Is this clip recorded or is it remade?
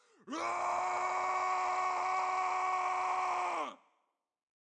recorded